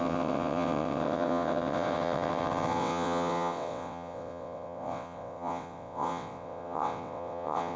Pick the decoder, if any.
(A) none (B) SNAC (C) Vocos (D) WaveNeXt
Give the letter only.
D